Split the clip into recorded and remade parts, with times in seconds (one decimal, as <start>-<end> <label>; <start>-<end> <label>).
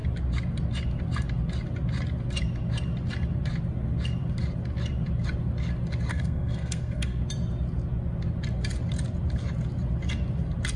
0.0-6.1 recorded; 6.1-7.2 remade; 7.2-10.8 recorded